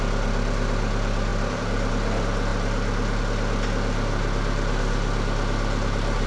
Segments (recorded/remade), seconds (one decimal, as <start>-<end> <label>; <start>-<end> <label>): 0.0-6.3 recorded